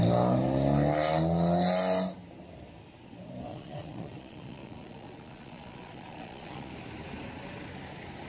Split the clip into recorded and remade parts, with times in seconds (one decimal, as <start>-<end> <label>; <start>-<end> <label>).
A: 0.0-3.5 recorded; 3.5-6.7 remade; 6.7-8.3 recorded